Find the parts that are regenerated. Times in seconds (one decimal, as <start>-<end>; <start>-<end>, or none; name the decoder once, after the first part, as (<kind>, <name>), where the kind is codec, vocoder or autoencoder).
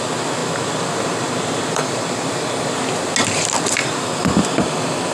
0.4-2.8 (vocoder, BigVGAN v2); 3.8-5.1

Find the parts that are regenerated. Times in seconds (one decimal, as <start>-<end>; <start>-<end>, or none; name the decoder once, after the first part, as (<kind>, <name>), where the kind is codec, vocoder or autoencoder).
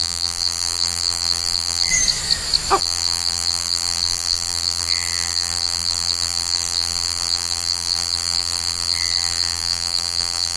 0.0-1.9 (vocoder, BigVGAN v2); 2.8-10.6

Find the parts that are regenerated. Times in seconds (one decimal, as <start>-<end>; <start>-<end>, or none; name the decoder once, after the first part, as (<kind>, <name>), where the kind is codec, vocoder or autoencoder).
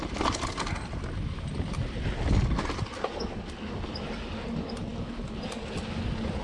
none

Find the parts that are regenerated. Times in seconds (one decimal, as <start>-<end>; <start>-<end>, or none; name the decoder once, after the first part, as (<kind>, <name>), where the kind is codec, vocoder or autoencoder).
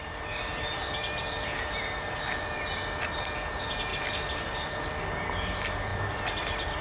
3.9-5.0 (vocoder, BigVGAN v2); 5.9-6.8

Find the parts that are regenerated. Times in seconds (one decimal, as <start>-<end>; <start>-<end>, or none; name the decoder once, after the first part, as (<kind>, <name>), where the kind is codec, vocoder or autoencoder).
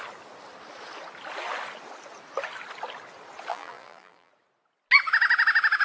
3.5-4.3 (vocoder, BigVGAN v2)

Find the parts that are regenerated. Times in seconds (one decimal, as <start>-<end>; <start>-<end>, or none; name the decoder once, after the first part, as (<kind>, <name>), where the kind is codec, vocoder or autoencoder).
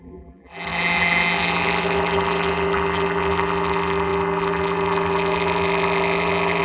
0.0-6.6 (vocoder, BigVGAN v2)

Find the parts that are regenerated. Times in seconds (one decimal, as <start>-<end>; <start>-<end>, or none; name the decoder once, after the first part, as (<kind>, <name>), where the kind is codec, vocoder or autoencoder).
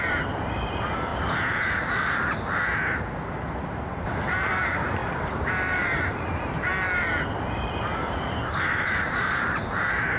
0.0-1.1 (vocoder, BigVGAN v2); 3.3-5.0; 5.5-6.7; 8.0-10.2